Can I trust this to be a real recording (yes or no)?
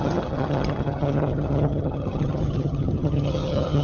no